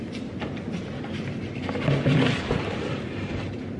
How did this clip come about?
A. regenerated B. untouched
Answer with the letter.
B